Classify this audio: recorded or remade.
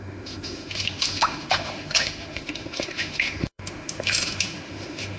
remade